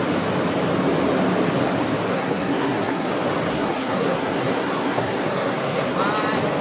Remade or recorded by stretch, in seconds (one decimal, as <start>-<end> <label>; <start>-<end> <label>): 0.0-2.1 recorded; 2.1-3.1 remade; 3.1-3.5 recorded; 3.5-6.0 remade; 6.0-6.6 recorded